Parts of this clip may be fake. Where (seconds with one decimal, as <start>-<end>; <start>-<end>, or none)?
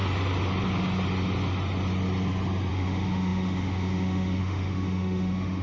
2.7-5.6